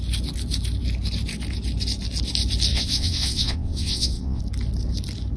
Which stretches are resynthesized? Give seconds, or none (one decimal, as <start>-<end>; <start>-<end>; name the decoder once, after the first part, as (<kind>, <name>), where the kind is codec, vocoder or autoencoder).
2.7-4.4 (vocoder, WaveNeXt)